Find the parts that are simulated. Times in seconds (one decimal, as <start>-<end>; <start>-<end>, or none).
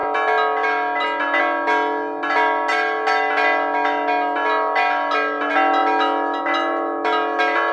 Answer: none